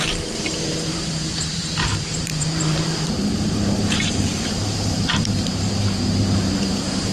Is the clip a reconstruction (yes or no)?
yes